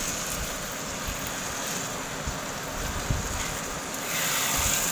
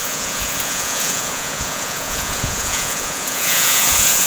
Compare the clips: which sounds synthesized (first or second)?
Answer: second